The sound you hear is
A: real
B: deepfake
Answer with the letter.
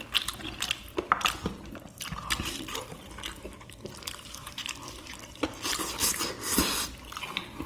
A